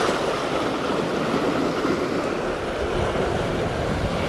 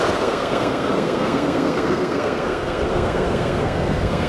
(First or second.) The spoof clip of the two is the second